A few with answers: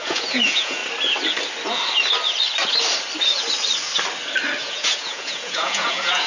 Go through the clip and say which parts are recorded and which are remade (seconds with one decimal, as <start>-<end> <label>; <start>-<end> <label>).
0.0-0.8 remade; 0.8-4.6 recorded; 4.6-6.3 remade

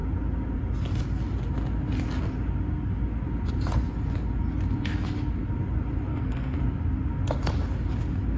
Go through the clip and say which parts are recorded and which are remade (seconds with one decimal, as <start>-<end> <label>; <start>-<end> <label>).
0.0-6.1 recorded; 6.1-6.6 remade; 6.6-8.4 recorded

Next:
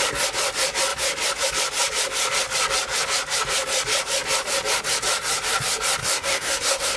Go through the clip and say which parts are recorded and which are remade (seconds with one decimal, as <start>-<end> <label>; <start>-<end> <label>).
0.0-6.0 recorded; 6.0-7.0 remade

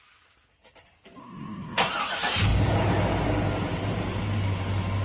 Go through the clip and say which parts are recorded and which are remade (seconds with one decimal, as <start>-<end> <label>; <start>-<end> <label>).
0.0-1.2 recorded; 1.2-1.9 remade; 1.9-5.0 recorded

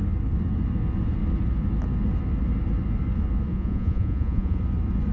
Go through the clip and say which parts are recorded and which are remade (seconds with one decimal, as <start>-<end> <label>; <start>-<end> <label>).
0.0-3.5 recorded; 3.5-4.6 remade; 4.6-5.1 recorded

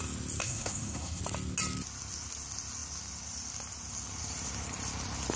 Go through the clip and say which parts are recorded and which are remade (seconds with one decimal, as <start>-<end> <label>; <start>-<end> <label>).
0.0-0.4 recorded; 0.4-1.2 remade; 1.2-5.4 recorded